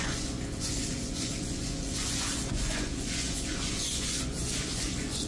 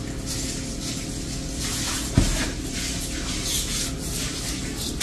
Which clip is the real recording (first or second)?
second